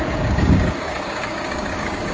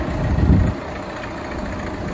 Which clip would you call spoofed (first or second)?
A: first